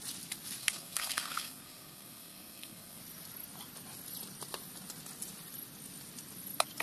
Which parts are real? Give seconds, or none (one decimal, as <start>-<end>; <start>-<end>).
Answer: 0.0-0.6; 3.0-6.8